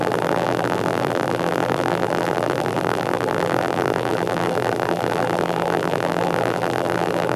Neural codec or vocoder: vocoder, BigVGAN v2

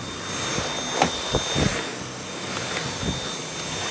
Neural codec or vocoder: none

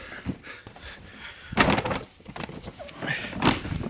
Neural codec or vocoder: vocoder, BigVGAN v2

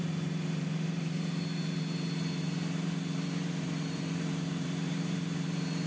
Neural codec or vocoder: vocoder, BigVGAN v2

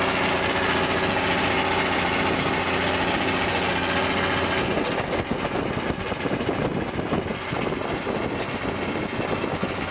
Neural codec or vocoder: none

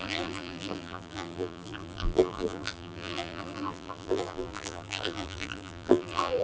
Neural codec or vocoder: vocoder, BigVGAN v2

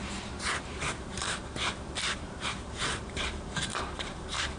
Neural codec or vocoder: vocoder, BigVGAN v2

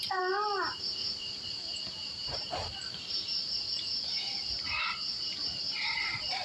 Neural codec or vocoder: vocoder, BigVGAN v2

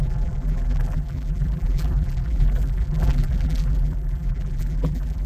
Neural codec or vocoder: vocoder, BigVGAN v2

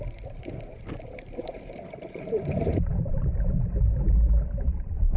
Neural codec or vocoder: vocoder, BigVGAN v2